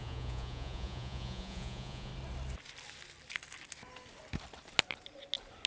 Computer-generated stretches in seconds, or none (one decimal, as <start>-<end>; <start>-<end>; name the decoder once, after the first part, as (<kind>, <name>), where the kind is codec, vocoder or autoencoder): 0.0-2.1 (vocoder, Vocos)